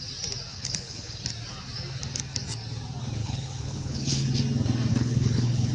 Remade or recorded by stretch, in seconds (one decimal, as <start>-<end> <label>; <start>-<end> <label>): 0.0-0.5 recorded; 0.5-1.2 remade; 1.2-3.2 recorded; 3.2-4.3 remade; 4.3-4.9 recorded; 4.9-5.7 remade